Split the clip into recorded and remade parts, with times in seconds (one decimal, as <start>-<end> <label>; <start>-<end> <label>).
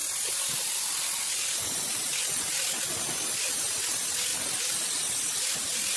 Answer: 0.0-3.6 remade; 3.6-4.3 recorded; 4.3-5.0 remade; 5.0-6.0 recorded